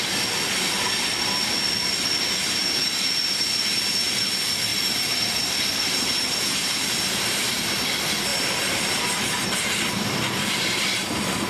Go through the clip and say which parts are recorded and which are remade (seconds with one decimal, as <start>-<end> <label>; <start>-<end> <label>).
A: 0.0-2.6 recorded; 2.6-3.2 remade; 3.2-4.7 recorded; 4.7-7.5 remade; 7.5-8.3 recorded; 8.3-10.7 remade; 10.7-11.5 recorded